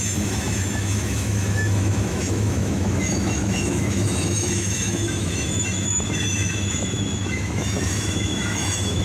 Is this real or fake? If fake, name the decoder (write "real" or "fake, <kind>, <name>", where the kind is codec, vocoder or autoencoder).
fake, autoencoder, DAC-VAE